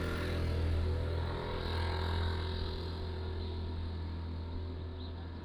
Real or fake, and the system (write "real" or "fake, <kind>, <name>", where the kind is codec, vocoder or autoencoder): real